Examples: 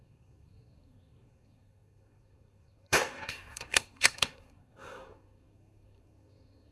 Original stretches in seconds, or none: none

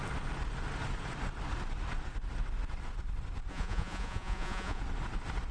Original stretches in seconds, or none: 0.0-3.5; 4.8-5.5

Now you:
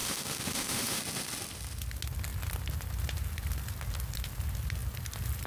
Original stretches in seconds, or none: 1.0-5.5